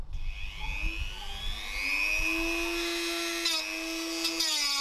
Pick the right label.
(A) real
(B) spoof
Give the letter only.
A